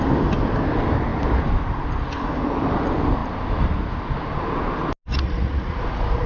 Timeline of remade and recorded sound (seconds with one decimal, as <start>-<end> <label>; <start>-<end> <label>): 0.0-5.1 recorded; 5.1-5.8 remade; 5.8-6.3 recorded